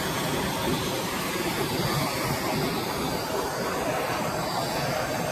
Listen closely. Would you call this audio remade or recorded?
recorded